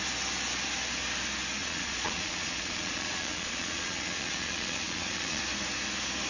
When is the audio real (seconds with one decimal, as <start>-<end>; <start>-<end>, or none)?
0.0-1.6; 5.4-6.3